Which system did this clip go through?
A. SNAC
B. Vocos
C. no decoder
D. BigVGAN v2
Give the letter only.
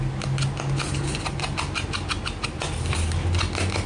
C